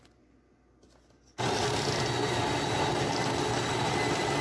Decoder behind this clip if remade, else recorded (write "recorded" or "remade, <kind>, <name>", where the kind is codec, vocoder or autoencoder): recorded